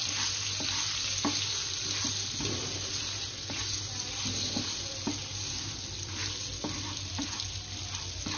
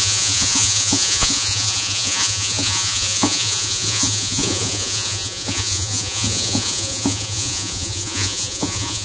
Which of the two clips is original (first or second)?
first